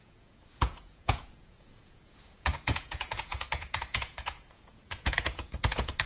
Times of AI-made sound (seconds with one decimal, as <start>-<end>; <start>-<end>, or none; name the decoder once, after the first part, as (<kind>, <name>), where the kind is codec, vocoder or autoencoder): 0.0-6.1 (vocoder, Vocos)